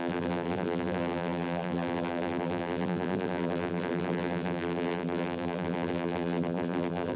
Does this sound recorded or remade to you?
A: remade